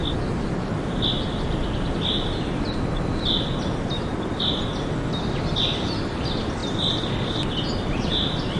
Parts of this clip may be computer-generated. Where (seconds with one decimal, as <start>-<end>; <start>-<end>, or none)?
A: none